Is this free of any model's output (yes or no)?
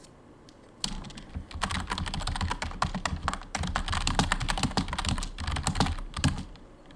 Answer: yes